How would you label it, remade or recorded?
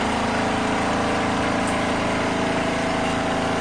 recorded